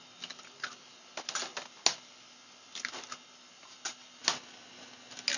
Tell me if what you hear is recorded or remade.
recorded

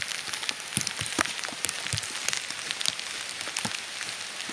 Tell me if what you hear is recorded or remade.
recorded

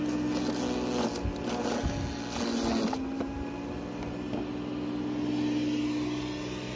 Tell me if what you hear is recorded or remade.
recorded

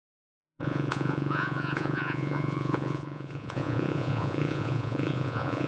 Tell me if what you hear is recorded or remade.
remade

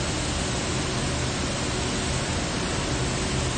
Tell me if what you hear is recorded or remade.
recorded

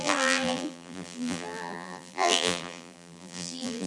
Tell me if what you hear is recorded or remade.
remade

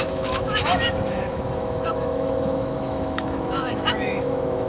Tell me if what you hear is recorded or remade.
remade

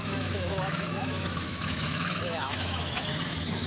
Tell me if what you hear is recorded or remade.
remade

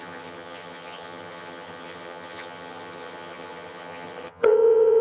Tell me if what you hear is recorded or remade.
remade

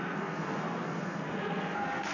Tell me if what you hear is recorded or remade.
remade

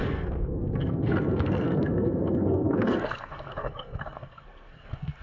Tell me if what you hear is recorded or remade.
remade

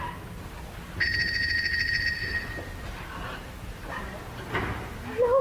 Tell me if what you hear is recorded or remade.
recorded